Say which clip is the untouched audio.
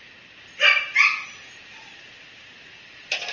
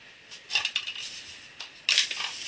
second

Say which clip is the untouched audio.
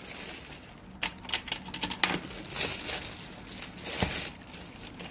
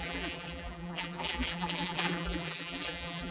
first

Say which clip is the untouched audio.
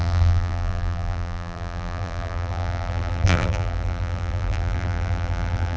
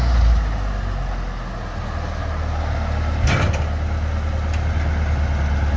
second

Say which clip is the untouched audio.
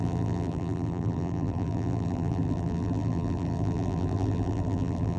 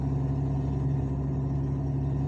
second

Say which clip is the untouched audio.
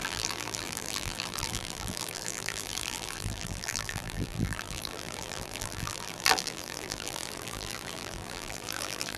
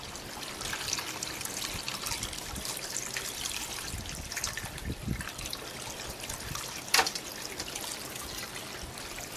second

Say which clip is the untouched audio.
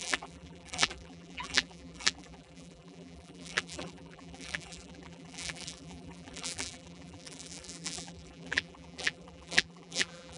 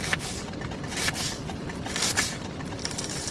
second